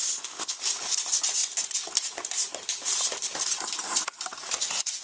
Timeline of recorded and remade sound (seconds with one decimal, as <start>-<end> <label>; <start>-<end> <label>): 0.0-0.6 remade; 0.6-5.0 recorded